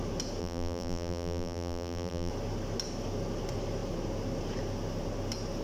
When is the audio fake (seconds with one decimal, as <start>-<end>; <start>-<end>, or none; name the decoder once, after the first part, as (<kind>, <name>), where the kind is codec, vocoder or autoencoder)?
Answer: 0.4-2.3 (vocoder, BigVGAN v2)